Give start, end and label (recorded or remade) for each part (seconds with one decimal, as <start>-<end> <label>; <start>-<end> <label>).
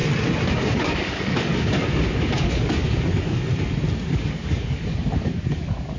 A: 0.0-0.5 recorded; 0.5-3.5 remade; 3.5-4.1 recorded; 4.1-6.0 remade